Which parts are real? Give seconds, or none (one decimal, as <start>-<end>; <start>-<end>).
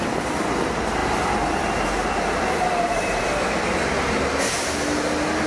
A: 0.0-5.5